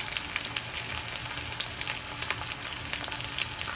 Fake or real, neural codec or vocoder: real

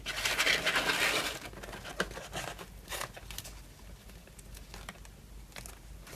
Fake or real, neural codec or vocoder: real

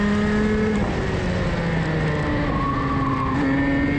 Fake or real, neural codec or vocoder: real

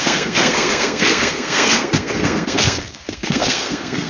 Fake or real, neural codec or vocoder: fake, codec, SNAC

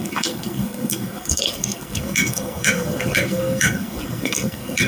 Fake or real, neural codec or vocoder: fake, codec, SNAC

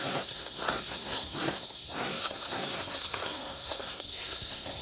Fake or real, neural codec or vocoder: fake, codec, SNAC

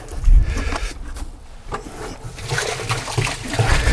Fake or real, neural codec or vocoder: real